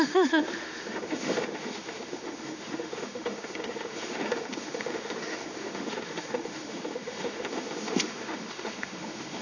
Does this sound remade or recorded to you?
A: remade